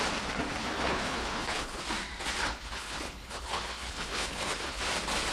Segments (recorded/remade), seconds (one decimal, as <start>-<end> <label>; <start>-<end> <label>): 0.0-0.6 recorded; 0.6-1.8 remade; 1.8-2.4 recorded; 2.4-4.8 remade; 4.8-5.3 recorded